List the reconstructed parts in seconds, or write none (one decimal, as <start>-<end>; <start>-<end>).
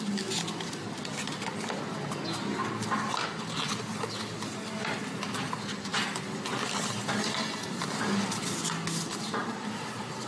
none